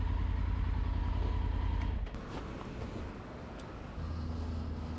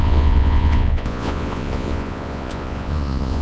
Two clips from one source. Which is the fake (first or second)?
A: second